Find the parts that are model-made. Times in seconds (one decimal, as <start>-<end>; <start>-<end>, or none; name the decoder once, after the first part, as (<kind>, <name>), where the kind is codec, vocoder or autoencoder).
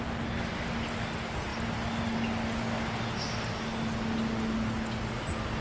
none